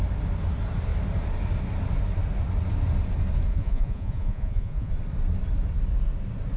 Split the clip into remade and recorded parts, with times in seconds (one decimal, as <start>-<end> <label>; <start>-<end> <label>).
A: 0.0-3.5 recorded; 3.5-4.9 remade; 4.9-6.6 recorded